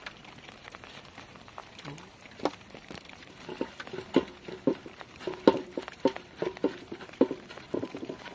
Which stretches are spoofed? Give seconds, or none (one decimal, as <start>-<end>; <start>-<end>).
none